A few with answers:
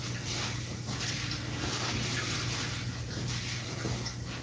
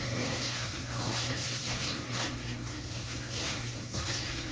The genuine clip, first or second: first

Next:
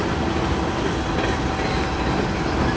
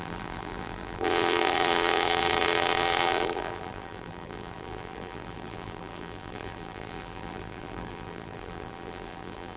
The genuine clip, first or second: first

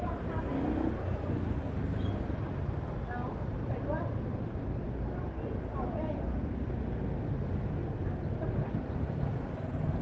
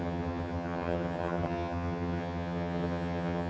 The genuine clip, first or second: first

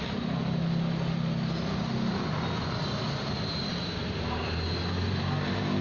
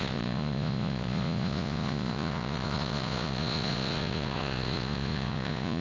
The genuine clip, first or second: first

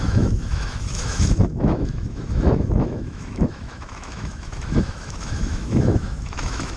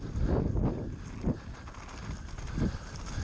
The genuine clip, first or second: second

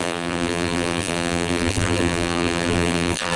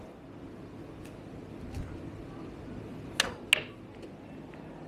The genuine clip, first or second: second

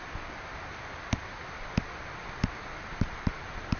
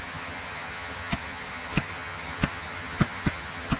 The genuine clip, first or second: first